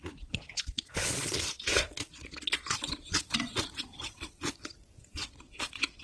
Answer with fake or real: fake